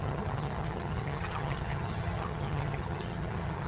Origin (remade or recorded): remade